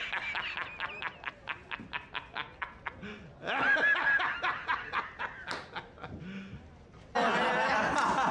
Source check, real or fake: real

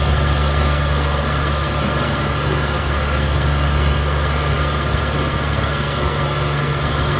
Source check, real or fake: fake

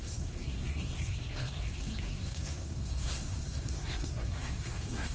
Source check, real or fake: fake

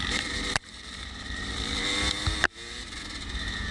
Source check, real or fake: real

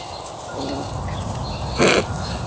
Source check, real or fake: real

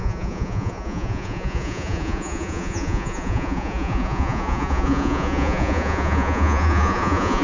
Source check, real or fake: fake